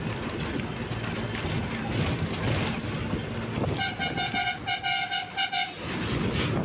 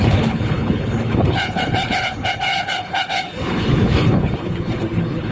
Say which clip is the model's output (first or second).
second